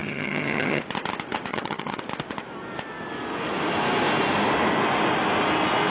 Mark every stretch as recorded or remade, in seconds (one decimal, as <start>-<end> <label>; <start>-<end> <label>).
0.0-0.8 remade; 0.8-1.5 recorded; 1.5-2.0 remade; 2.0-5.9 recorded